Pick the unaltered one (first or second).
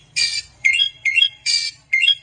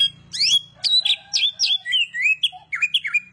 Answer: second